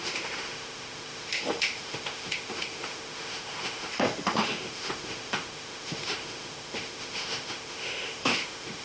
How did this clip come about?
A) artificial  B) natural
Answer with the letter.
A